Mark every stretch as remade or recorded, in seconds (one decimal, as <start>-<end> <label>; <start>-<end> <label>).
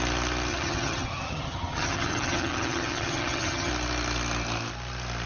0.0-0.5 recorded; 0.5-3.7 remade; 3.7-5.3 recorded